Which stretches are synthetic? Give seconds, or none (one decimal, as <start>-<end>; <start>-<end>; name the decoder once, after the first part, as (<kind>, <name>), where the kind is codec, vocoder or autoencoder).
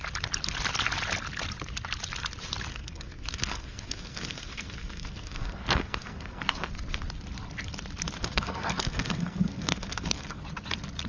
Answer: 2.7-6.7 (codec, SNAC); 8.2-10.4